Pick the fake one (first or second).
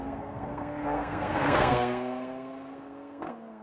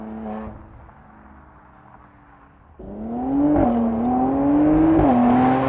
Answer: first